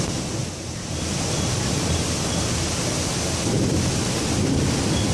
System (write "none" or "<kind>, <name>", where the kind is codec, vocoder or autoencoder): none